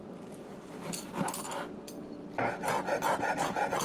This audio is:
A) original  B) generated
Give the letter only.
A